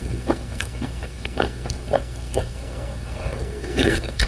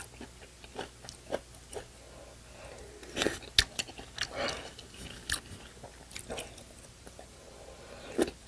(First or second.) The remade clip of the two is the first